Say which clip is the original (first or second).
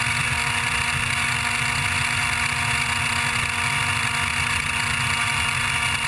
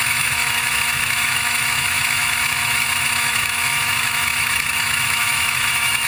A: first